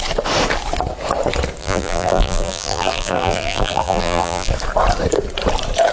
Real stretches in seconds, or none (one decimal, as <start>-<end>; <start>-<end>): 0.0-1.6; 4.5-5.9